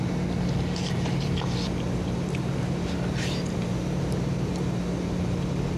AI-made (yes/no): no